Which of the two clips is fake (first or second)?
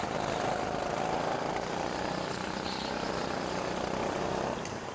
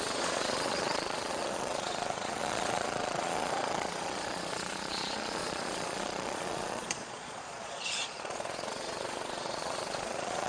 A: second